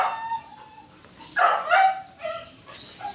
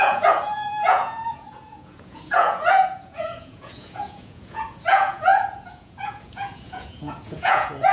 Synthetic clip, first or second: second